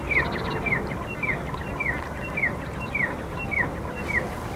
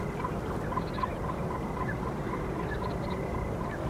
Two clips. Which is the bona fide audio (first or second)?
first